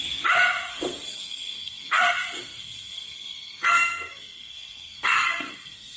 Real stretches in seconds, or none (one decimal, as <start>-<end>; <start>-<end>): 0.0-0.7; 2.0-2.4